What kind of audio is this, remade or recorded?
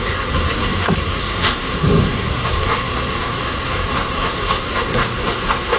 remade